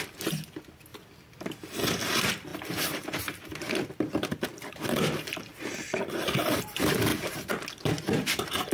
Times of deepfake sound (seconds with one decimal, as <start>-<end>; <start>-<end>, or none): 0.0-0.9; 1.9-7.1; 7.7-8.7